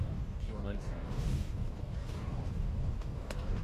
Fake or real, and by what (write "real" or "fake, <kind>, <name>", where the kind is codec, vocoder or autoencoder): fake, codec, DAC